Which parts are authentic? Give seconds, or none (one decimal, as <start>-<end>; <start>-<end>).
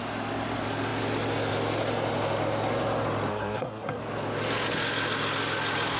0.0-3.3; 4.0-6.0